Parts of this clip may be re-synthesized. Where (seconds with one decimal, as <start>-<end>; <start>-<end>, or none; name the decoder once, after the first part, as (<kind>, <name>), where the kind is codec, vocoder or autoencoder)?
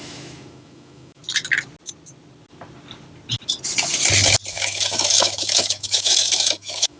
0.0-1.2 (autoencoder, DAC-VAE); 4.5-7.0